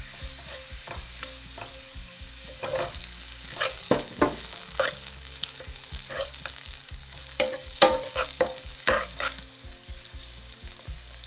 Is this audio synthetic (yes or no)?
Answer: yes